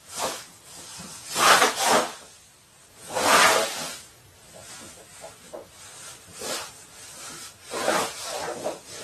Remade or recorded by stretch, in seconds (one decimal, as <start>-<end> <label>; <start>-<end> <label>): 0.0-4.6 recorded; 4.6-8.5 remade; 8.5-9.0 recorded